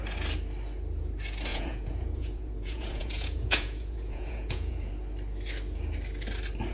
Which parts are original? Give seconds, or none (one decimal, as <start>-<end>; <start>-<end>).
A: 0.0-1.5; 4.9-6.7